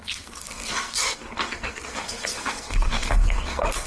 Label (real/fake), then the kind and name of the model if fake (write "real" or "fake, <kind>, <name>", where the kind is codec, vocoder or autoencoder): fake, codec, SNAC